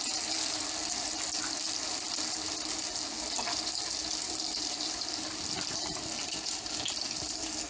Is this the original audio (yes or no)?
yes